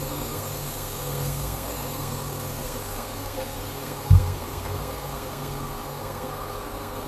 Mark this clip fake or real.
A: fake